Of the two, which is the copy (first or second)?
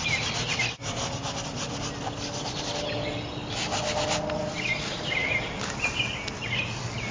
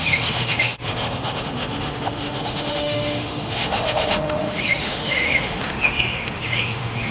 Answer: second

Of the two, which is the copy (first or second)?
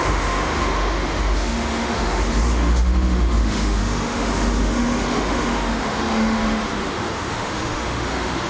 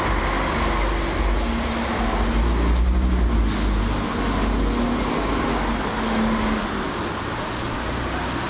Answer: first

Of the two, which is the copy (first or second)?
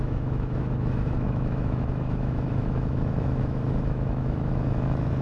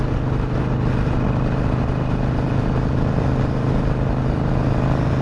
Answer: first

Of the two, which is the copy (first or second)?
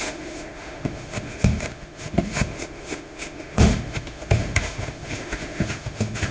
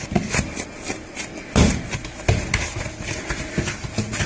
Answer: first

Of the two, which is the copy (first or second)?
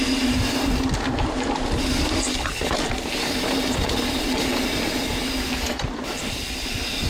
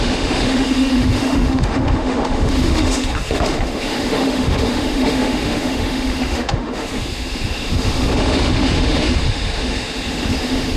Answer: second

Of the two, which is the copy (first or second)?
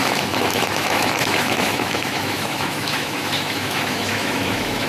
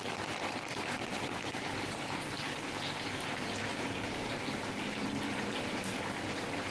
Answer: first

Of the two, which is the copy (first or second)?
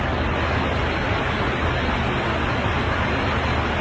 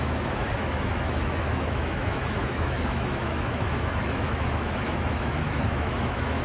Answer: second